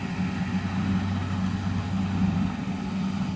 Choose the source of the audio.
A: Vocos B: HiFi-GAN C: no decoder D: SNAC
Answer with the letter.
C